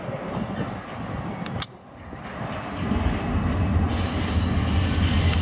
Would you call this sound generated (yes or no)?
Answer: no